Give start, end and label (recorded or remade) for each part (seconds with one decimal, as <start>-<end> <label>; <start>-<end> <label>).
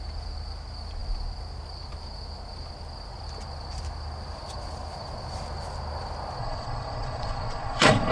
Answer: 0.0-6.4 recorded; 6.4-8.1 remade